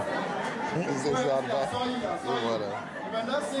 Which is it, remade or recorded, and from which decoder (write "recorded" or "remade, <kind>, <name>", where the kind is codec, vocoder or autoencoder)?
recorded